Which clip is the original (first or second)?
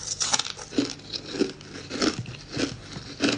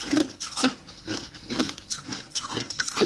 first